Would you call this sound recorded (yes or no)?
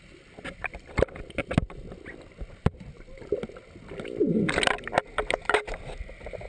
yes